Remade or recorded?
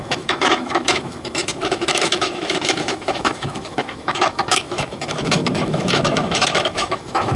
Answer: remade